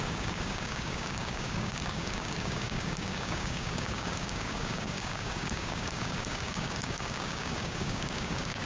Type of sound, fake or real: fake